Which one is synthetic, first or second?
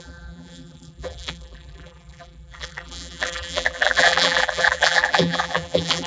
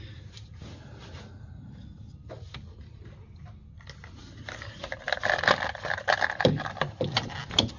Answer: first